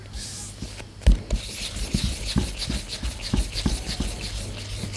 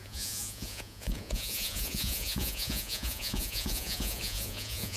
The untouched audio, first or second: first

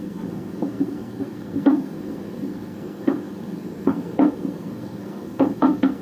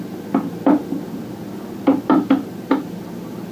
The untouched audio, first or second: second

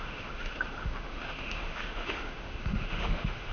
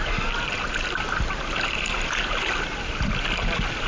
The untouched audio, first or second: second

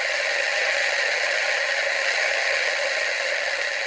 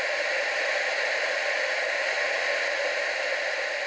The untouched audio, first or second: second